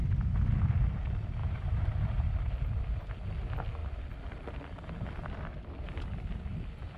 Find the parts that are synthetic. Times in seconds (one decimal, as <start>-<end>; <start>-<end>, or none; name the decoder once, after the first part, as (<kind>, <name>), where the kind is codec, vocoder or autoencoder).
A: 1.4-2.3 (vocoder, BigVGAN v2)